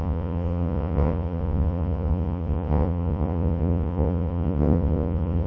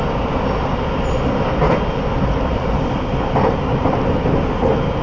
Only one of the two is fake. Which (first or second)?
first